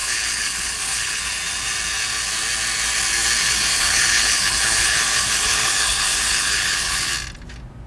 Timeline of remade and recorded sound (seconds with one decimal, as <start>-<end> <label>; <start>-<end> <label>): 0.0-1.2 remade; 1.2-3.4 recorded; 3.4-7.1 remade; 7.1-7.9 recorded